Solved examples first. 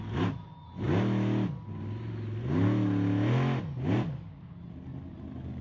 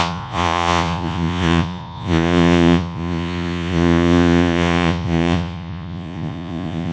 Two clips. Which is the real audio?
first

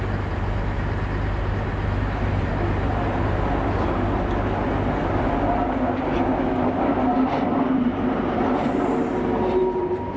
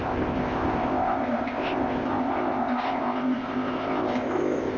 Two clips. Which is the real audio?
first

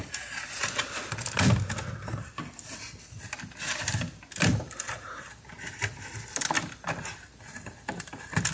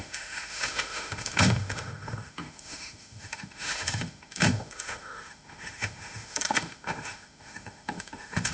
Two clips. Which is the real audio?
first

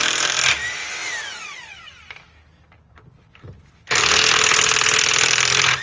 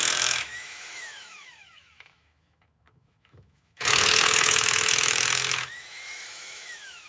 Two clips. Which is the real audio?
first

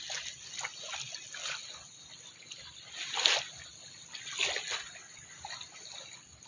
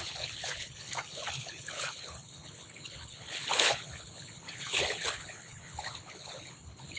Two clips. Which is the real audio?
first